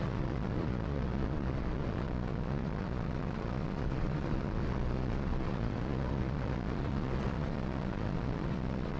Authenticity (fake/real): fake